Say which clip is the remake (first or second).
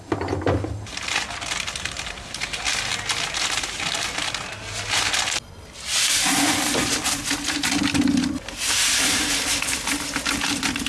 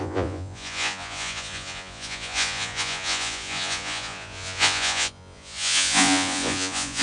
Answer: second